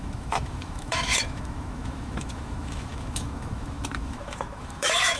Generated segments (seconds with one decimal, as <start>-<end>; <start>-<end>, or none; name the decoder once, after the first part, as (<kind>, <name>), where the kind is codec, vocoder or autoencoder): 0.0-5.2 (autoencoder, DAC-VAE)